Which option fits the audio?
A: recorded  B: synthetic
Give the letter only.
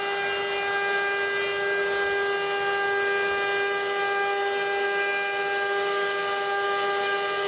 A